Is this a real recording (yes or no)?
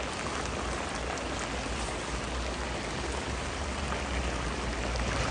yes